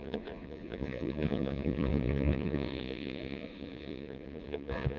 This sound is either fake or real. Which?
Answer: fake